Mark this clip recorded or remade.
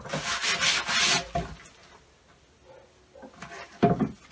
recorded